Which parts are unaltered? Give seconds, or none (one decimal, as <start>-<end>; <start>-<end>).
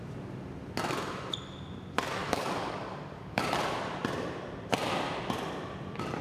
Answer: 0.0-2.2; 3.4-6.2